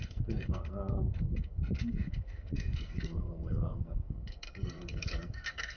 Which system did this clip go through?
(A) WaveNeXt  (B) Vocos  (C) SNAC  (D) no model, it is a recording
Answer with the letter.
C